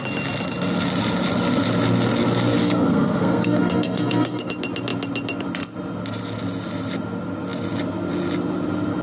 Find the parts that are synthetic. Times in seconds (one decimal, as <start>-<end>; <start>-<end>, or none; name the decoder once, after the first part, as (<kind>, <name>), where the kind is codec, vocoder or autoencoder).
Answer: 2.6-4.5 (codec, SNAC)